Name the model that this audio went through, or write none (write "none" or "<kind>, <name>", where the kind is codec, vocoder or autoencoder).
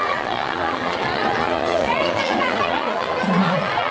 vocoder, Vocos